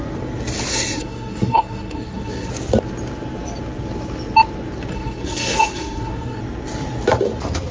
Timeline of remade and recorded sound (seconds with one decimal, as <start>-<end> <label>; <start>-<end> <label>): 0.0-0.7 recorded; 0.7-2.5 remade; 2.5-4.9 recorded; 4.9-6.4 remade; 6.4-7.7 recorded